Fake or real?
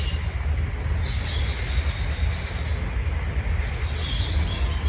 real